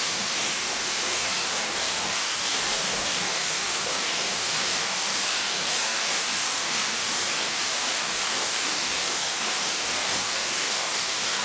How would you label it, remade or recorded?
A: remade